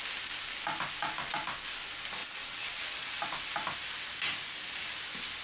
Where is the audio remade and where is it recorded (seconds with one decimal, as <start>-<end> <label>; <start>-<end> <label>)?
0.0-2.2 recorded; 2.2-3.2 remade; 3.2-5.4 recorded